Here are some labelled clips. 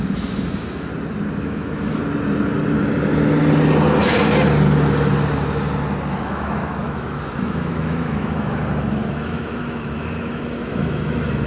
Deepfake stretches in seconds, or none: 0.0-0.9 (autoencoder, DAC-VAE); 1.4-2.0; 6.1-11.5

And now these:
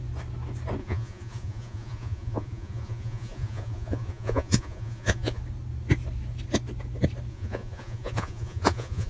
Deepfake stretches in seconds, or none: 0.8-5.4 (vocoder, Vocos); 7.3-9.1

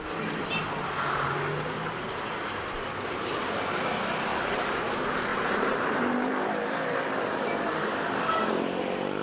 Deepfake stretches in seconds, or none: 4.3-4.8 (vocoder, BigVGAN v2); 5.3-7.0